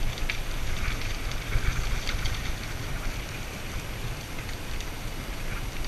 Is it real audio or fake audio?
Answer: real